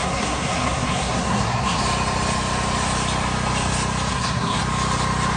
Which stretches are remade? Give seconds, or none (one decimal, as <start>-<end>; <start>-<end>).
0.0-1.8; 4.1-4.6

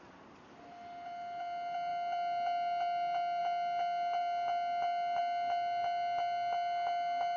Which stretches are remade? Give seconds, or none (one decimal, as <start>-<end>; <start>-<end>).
none

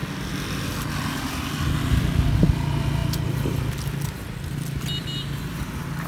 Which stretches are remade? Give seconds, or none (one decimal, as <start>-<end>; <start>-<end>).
none

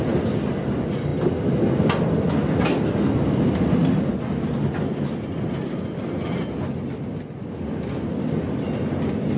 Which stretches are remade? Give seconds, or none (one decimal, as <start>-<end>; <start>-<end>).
none

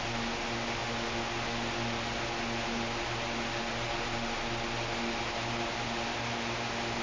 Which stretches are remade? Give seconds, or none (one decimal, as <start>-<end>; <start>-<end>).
none